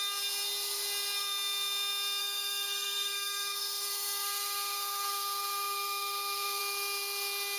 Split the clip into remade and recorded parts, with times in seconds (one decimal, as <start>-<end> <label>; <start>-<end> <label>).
0.0-2.2 recorded; 2.2-6.6 remade; 6.6-7.6 recorded